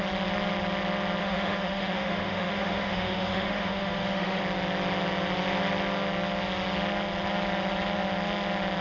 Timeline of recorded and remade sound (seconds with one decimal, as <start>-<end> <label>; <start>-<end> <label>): 0.0-1.2 recorded; 1.2-4.4 remade; 4.4-8.8 recorded

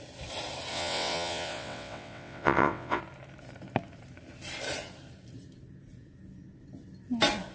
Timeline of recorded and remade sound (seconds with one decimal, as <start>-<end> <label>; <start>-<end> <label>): 0.0-0.7 recorded; 0.7-3.0 remade; 3.0-7.5 recorded

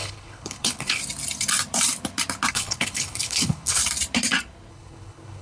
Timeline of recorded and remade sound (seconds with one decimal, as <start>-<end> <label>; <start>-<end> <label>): 0.0-1.0 remade; 1.0-2.5 recorded; 2.5-3.8 remade; 3.8-4.7 recorded; 4.7-5.4 remade

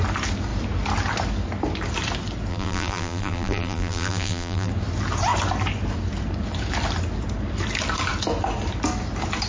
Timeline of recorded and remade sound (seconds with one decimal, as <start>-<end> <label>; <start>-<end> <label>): 0.0-2.5 recorded; 2.5-4.7 remade; 4.7-9.5 recorded

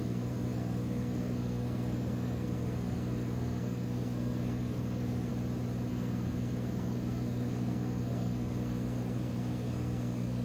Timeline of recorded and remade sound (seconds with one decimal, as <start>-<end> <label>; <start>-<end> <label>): 0.0-5.3 remade; 5.3-5.9 recorded; 5.9-10.4 remade

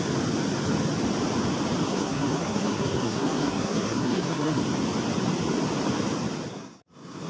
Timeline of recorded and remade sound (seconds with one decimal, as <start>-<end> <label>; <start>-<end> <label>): 0.0-1.9 recorded; 1.9-4.6 remade; 4.6-6.5 recorded; 6.5-7.3 remade